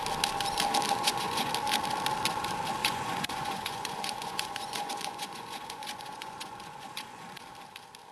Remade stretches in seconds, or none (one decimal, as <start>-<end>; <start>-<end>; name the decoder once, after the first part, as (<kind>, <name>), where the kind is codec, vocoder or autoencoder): 1.0-1.5 (vocoder, Vocos); 2.8-7.4